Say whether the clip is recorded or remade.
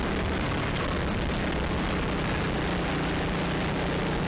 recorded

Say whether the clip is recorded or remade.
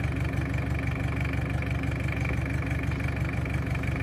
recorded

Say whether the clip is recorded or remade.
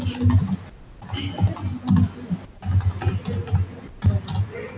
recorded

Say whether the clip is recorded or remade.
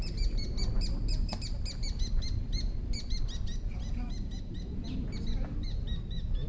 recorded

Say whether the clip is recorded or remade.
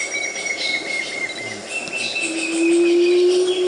recorded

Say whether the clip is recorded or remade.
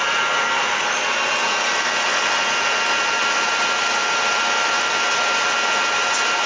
recorded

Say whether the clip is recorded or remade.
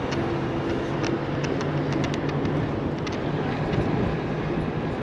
recorded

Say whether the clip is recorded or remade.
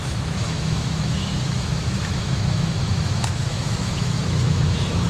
remade